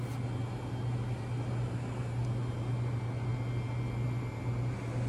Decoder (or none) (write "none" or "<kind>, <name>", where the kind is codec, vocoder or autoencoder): none